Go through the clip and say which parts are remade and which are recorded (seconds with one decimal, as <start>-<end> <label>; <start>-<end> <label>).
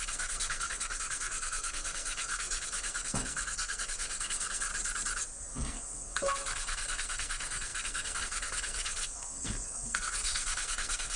0.0-4.7 remade; 4.7-5.4 recorded; 5.4-11.2 remade